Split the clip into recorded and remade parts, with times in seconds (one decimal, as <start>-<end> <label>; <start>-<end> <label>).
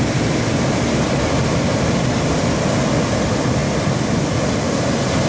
0.0-5.3 recorded